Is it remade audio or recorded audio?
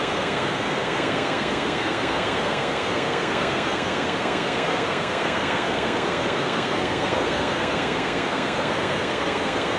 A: remade